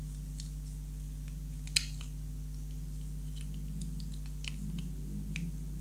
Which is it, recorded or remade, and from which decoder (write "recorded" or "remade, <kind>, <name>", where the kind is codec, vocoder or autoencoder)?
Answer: recorded